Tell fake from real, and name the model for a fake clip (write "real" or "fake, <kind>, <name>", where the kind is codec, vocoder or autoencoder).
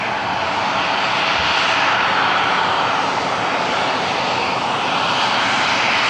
real